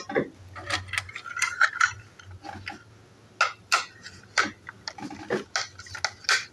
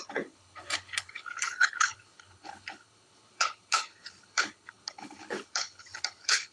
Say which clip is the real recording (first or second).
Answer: first